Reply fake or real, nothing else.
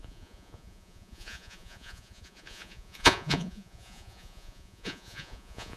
fake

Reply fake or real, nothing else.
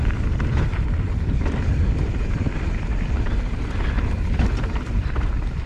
fake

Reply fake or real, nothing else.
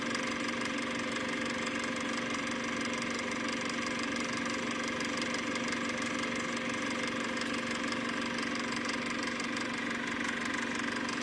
real